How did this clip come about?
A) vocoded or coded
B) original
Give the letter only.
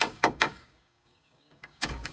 A